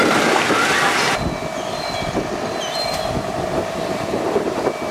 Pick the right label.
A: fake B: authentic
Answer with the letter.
B